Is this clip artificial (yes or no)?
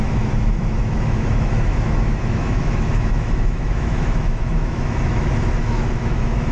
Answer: yes